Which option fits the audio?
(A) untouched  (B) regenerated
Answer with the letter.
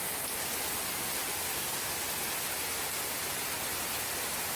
A